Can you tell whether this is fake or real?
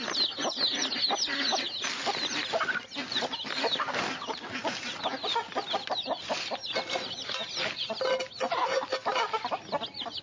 real